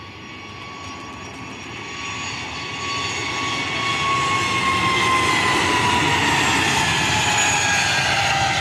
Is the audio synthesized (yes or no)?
no